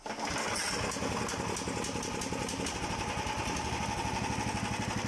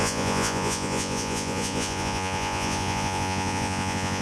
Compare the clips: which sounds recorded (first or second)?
first